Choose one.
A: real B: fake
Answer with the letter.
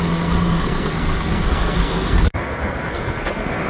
B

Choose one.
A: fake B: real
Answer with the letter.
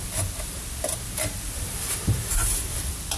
A